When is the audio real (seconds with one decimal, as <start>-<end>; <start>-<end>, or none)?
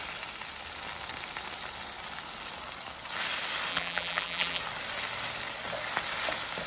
0.0-3.7; 4.6-6.7